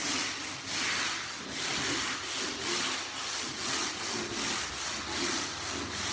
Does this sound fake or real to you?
real